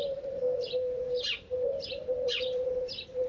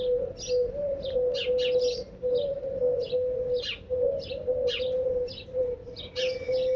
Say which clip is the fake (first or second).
first